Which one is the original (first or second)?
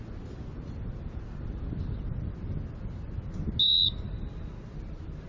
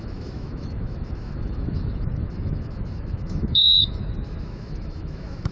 first